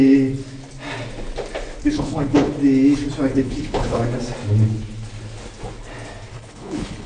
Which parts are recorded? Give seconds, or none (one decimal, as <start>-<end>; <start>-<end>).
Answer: 0.0-1.8; 2.5-3.3; 4.0-6.3